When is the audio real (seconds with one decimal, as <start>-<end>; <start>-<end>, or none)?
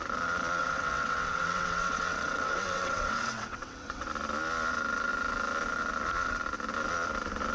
0.0-0.6; 4.1-7.5